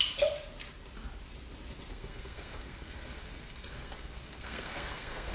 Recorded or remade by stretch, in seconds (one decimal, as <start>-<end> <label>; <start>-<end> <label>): 0.0-1.9 recorded; 1.9-5.3 remade